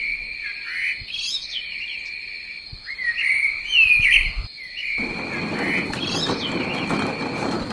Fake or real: real